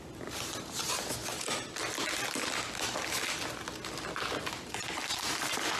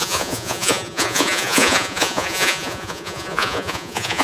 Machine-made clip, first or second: second